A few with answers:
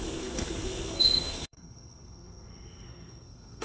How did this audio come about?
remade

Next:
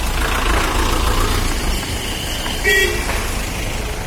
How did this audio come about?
recorded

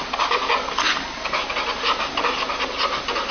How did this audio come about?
recorded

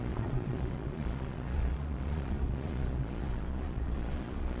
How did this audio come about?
remade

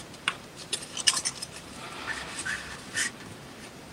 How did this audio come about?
remade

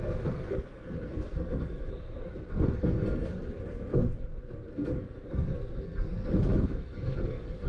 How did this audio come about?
remade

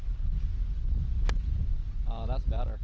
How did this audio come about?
recorded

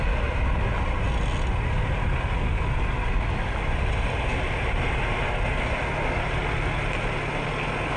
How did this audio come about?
recorded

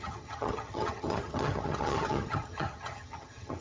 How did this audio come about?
remade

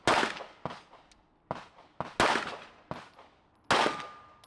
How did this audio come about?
recorded